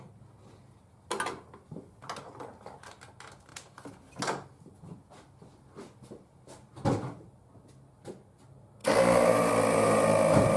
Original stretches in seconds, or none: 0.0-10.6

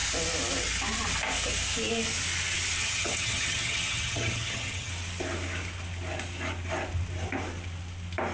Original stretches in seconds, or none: 0.0-2.8; 4.9-8.3